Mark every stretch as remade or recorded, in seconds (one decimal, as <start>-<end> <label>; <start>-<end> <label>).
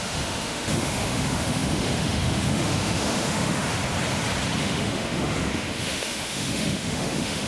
0.0-3.8 remade; 3.8-4.6 recorded; 4.6-7.5 remade